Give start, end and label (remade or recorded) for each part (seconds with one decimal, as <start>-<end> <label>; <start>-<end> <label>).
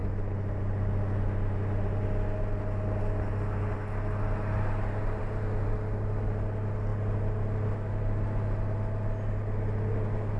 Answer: 0.0-10.4 recorded